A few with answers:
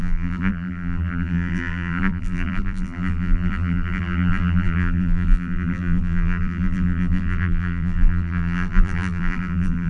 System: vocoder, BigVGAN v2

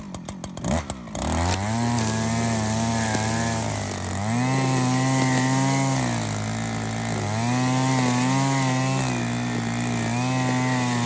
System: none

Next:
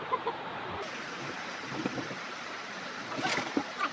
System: vocoder, BigVGAN v2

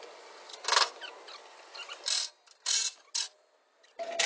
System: none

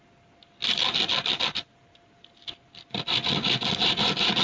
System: none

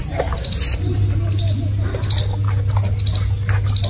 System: none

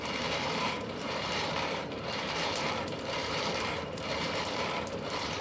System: vocoder, BigVGAN v2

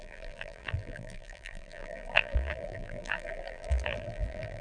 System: vocoder, BigVGAN v2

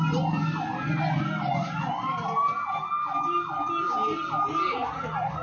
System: none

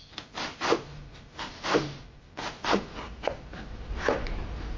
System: vocoder, BigVGAN v2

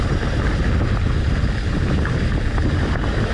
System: none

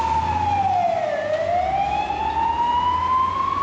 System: none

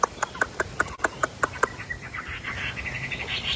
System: vocoder, BigVGAN v2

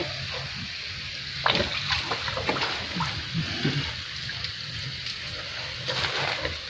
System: none